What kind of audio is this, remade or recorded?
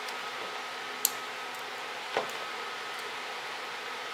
recorded